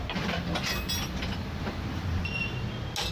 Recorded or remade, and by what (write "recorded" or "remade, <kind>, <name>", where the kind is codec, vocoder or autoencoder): recorded